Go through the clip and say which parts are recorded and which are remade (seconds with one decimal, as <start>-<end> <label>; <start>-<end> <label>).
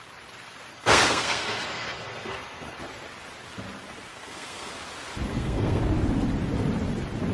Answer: 0.0-0.7 recorded; 0.7-2.8 remade; 2.8-4.1 recorded; 4.1-4.7 remade; 4.7-5.3 recorded; 5.3-5.8 remade; 5.8-7.3 recorded